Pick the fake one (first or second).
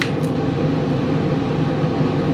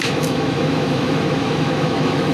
second